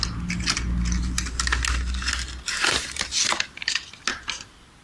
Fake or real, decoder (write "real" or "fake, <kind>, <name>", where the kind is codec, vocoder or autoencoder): real